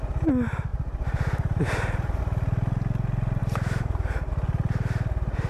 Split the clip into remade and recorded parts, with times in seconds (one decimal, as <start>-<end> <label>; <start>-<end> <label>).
0.0-0.7 recorded; 0.7-2.2 remade; 2.2-3.4 recorded; 3.4-4.3 remade; 4.3-5.5 recorded

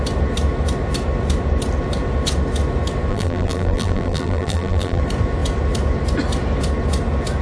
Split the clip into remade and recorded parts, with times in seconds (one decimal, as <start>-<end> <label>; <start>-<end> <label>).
0.0-3.1 recorded; 3.1-5.0 remade; 5.0-7.4 recorded